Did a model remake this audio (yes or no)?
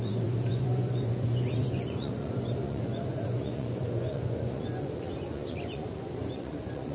yes